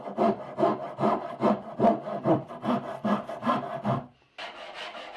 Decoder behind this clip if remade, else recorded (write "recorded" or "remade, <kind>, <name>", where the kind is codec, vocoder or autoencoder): recorded